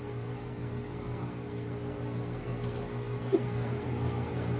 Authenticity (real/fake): fake